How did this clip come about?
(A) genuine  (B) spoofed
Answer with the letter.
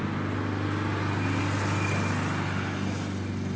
A